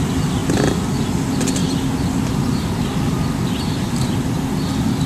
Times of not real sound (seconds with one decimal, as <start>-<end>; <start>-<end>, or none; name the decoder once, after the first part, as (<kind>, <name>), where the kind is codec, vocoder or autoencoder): none